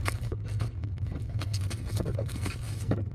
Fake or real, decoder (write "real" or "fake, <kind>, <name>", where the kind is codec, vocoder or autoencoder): fake, codec, SNAC